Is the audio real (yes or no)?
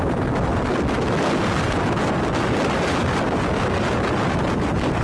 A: yes